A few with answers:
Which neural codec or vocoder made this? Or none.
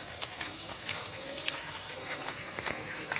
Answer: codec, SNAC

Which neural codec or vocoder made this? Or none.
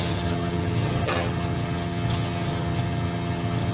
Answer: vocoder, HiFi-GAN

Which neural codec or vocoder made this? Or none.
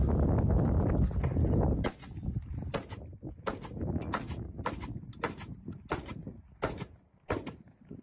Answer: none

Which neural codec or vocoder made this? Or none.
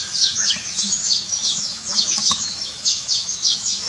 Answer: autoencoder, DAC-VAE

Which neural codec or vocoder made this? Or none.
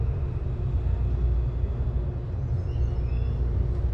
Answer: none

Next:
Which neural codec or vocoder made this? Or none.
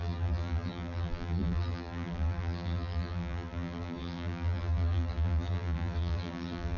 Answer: vocoder, BigVGAN v2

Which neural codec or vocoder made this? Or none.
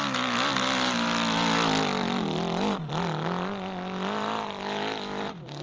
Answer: none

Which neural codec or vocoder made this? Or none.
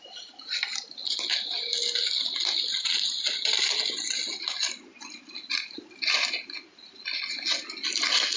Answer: none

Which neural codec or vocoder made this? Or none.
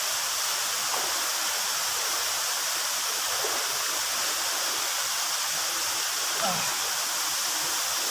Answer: none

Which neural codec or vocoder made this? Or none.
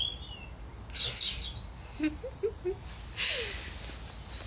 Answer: none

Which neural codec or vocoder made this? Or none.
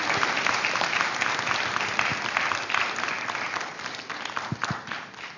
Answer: none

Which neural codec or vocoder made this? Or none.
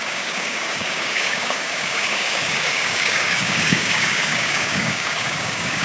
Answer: codec, DAC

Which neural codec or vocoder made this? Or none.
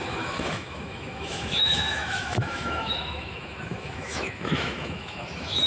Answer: autoencoder, DAC-VAE